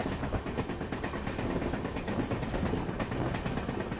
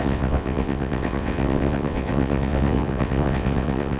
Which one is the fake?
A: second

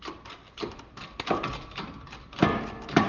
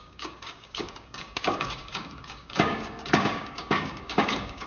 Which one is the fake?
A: second